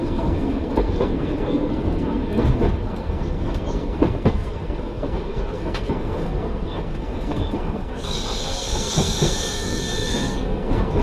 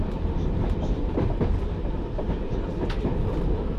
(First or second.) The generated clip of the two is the first